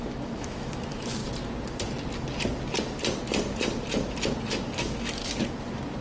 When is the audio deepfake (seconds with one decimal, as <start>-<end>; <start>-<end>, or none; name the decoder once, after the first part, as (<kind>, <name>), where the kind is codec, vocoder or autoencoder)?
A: 0.0-1.2 (autoencoder, DAC-VAE); 4.8-5.2